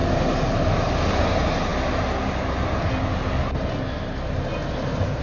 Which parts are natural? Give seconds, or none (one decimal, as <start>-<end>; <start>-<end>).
0.0-5.2